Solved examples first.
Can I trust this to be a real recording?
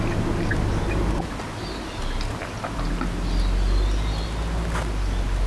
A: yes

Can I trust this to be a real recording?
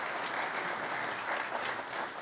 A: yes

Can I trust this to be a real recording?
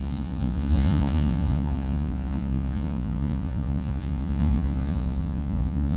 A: no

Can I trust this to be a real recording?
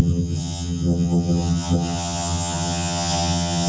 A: no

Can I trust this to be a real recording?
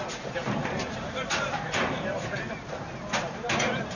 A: no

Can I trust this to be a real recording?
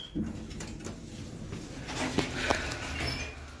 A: yes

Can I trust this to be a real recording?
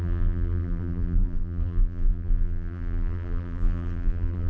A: no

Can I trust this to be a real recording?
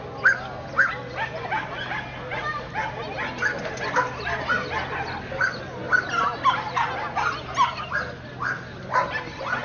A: yes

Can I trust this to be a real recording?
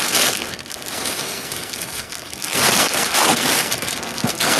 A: no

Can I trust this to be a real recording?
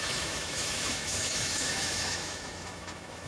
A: no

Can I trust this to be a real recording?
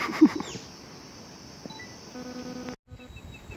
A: yes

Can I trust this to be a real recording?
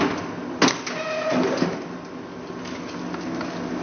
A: yes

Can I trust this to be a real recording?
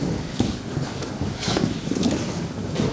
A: no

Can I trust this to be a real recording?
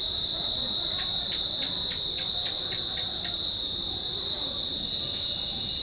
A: yes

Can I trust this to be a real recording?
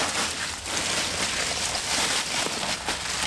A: yes